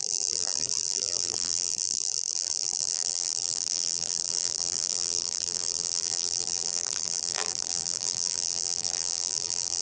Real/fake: fake